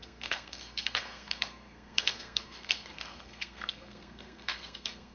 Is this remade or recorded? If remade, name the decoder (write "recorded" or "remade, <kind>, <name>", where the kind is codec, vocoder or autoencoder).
remade, codec, SNAC